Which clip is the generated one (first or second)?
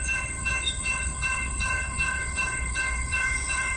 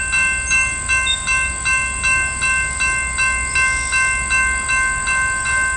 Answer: first